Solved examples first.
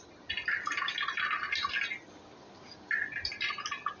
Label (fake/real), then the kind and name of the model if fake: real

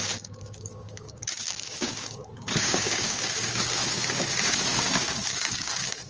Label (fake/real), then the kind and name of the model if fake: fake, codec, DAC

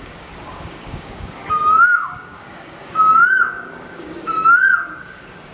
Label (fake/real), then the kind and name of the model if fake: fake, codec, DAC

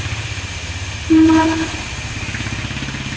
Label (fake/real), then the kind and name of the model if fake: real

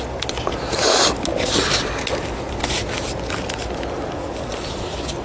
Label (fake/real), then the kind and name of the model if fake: real